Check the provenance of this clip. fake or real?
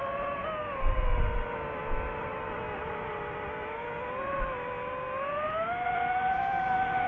real